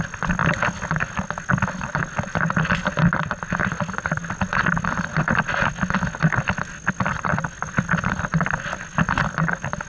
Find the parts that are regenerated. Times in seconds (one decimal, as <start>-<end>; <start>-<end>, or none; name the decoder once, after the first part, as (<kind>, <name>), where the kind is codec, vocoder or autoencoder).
none